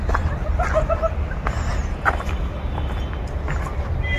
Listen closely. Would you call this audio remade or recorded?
recorded